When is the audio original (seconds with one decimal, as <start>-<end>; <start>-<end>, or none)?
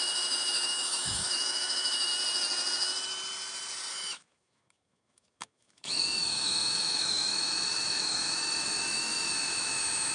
2.1-3.9